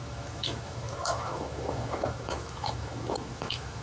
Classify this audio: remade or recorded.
remade